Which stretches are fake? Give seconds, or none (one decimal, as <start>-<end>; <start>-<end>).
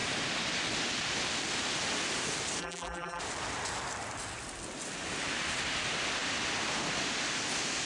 2.6-3.2